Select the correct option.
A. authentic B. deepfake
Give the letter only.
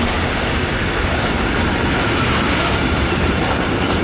A